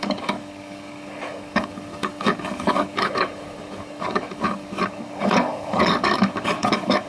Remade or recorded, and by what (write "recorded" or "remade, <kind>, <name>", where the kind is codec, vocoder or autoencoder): remade, codec, DAC